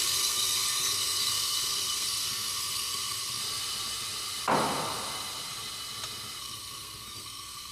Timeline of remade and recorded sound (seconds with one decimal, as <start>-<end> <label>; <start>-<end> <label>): 0.0-3.4 remade; 3.4-6.4 recorded; 6.4-7.7 remade